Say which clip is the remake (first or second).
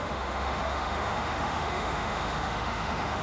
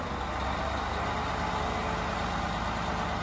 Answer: first